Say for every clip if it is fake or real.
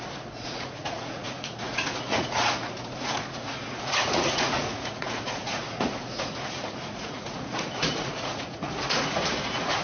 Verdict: fake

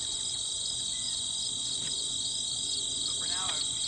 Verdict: fake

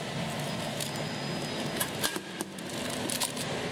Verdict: real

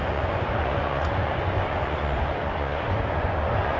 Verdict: fake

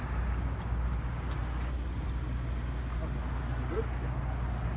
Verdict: real